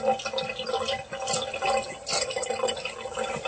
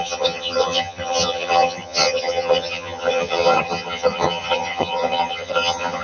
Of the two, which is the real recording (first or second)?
first